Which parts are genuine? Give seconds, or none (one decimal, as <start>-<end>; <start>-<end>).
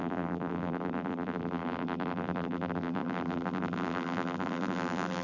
none